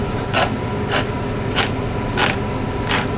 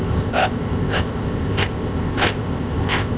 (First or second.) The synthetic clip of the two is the second